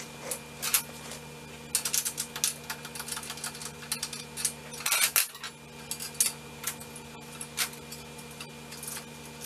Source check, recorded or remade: recorded